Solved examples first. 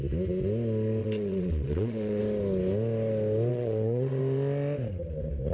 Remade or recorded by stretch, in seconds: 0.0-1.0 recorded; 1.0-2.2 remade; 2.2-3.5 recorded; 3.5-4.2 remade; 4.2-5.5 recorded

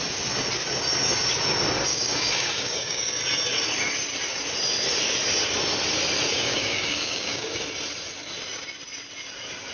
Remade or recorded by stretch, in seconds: 0.0-1.9 recorded; 1.9-3.2 remade; 3.2-6.3 recorded; 6.3-7.6 remade; 7.6-9.7 recorded